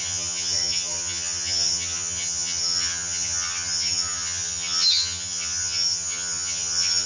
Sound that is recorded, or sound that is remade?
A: remade